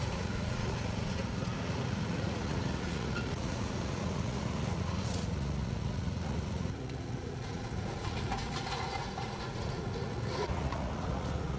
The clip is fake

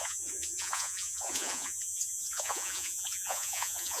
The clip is fake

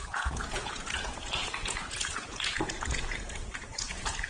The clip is fake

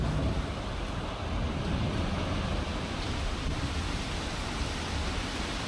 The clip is real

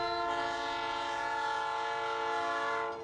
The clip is real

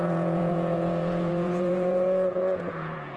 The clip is fake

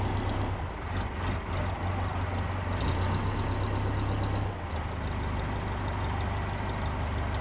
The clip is real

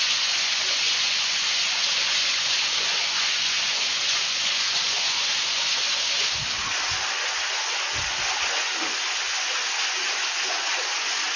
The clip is fake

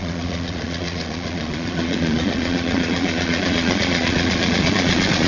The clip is fake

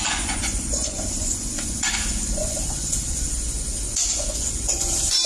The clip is fake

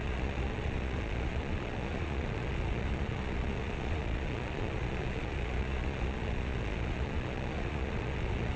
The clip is fake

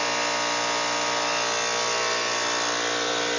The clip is real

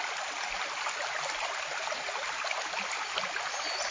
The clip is real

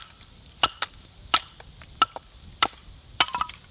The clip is real